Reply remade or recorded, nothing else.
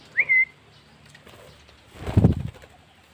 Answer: recorded